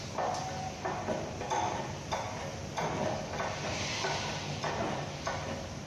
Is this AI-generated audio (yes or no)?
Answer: no